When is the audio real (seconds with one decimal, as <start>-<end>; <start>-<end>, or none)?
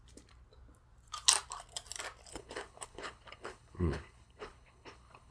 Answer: 0.0-2.3